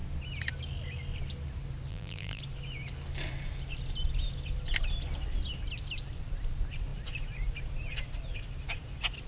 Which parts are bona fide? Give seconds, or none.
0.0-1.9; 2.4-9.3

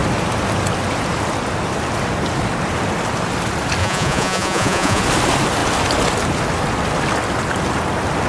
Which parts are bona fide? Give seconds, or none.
0.0-3.8; 5.0-8.3

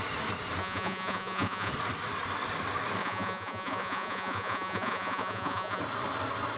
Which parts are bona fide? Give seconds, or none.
0.0-0.6; 1.7-3.0; 5.8-6.6

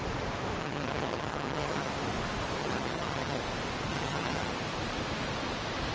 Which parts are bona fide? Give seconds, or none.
0.0-0.6; 1.9-2.6; 3.4-3.9; 4.5-5.9